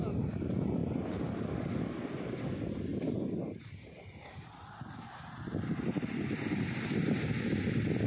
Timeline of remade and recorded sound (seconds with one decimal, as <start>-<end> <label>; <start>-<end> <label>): 0.0-8.1 recorded